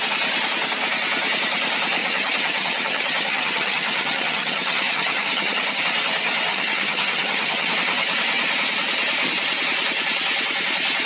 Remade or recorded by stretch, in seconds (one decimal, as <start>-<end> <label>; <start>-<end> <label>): 0.0-2.0 recorded; 2.0-5.8 remade; 5.8-6.5 recorded; 6.5-7.7 remade; 7.7-11.1 recorded